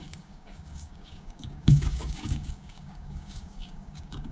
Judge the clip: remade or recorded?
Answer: remade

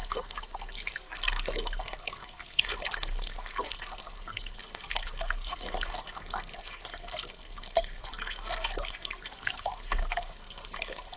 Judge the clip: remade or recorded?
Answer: remade